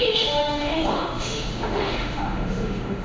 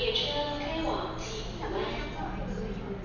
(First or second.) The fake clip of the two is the first